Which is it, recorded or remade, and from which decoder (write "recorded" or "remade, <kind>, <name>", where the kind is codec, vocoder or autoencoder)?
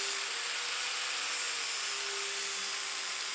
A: recorded